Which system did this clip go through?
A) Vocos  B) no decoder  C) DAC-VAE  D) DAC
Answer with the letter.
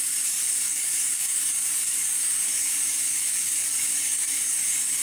D